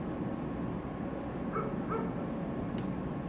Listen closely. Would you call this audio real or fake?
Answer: real